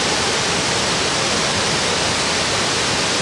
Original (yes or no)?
yes